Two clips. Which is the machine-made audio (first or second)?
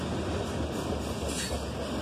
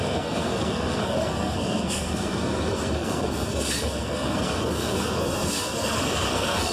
second